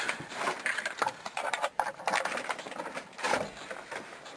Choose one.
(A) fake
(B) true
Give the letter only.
A